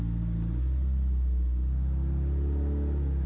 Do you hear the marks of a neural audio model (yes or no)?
no